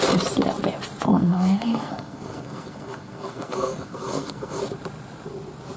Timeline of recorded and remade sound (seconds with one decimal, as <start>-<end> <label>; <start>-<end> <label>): 0.0-1.1 recorded; 1.1-4.6 remade; 4.6-5.8 recorded